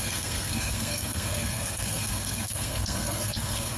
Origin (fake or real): fake